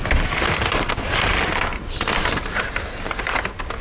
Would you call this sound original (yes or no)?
yes